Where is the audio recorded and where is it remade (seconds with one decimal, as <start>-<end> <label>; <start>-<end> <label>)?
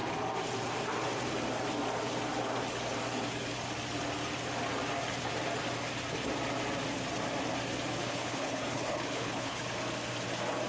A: 0.0-8.0 recorded; 8.0-9.6 remade; 9.6-10.7 recorded